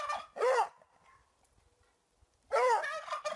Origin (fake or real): real